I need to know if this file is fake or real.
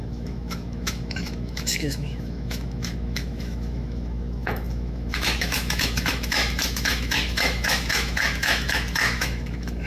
fake